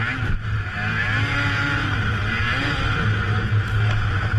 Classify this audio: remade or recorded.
recorded